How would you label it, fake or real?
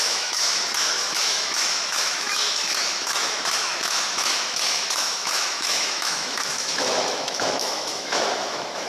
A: fake